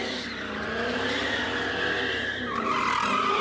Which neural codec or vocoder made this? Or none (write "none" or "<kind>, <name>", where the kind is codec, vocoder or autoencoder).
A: none